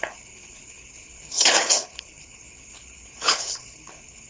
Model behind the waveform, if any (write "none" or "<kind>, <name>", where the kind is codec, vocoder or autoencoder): codec, HILCodec